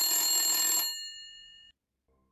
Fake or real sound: real